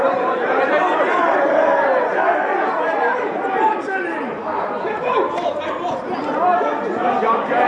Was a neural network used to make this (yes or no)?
yes